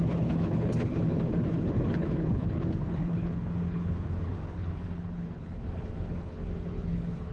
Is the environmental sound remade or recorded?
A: remade